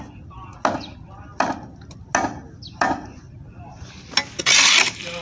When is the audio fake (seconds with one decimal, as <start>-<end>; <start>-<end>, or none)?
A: none